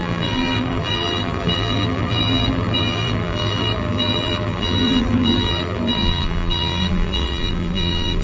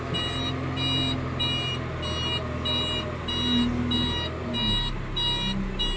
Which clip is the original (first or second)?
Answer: second